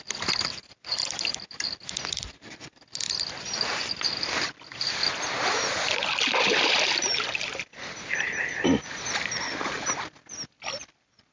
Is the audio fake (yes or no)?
no